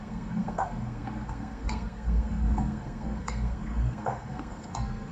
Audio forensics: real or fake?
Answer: fake